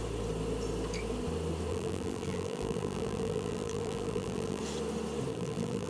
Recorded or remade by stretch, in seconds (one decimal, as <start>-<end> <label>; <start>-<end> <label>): 0.0-1.7 recorded; 1.7-4.6 remade; 4.6-5.3 recorded; 5.3-5.9 remade

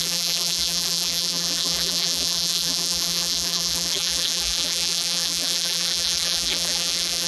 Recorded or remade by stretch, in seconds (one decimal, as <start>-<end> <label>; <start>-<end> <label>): 0.0-7.3 remade

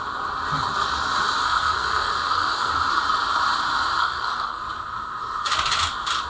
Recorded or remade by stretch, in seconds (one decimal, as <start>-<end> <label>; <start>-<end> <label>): 0.0-1.4 recorded; 1.4-2.7 remade; 2.7-4.0 recorded; 4.0-4.6 remade; 4.6-6.3 recorded

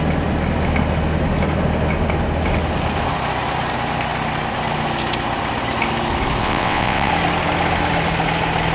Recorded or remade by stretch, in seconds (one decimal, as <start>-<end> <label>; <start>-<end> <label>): 0.0-6.4 recorded; 6.4-7.1 remade; 7.1-8.7 recorded

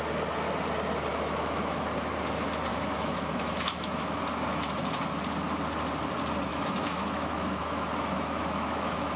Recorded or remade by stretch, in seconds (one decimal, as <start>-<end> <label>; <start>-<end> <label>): 0.0-1.1 recorded; 1.1-1.8 remade; 1.8-2.7 recorded; 2.7-4.2 remade; 4.2-6.5 recorded; 6.5-9.2 remade

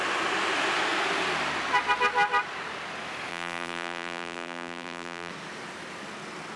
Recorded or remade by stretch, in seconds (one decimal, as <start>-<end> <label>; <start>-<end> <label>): 0.0-3.3 recorded; 3.3-5.3 remade; 5.3-6.6 recorded